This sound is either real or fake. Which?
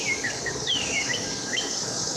fake